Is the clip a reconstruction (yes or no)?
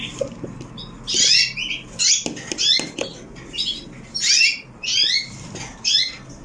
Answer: no